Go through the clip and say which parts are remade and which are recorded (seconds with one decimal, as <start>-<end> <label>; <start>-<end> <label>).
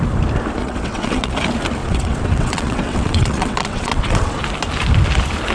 0.0-0.6 recorded; 0.6-1.3 remade; 1.3-1.8 recorded; 1.8-4.4 remade; 4.4-5.5 recorded